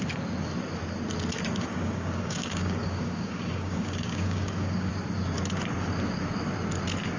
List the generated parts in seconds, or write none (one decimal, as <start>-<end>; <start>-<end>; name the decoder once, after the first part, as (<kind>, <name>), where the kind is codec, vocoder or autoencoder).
1.7-4.9 (codec, DAC)